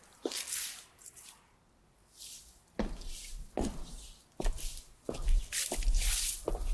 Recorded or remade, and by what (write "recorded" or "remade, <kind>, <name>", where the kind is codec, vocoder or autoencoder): recorded